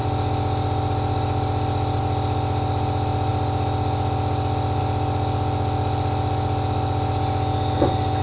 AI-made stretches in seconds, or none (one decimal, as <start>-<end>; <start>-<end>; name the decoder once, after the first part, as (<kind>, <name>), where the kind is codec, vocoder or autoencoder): none